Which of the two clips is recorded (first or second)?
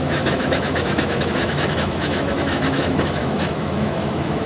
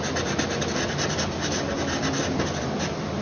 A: second